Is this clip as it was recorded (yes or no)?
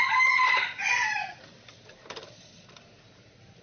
no